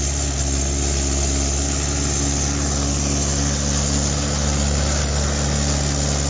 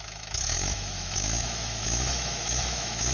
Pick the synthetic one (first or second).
second